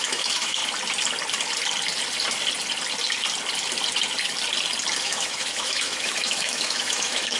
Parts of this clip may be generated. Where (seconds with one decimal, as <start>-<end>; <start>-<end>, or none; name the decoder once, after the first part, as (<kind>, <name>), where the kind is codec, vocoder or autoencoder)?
0.0-0.6 (autoencoder, DAC-VAE); 5.0-7.4